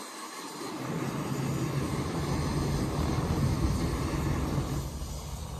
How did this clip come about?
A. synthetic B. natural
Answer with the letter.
B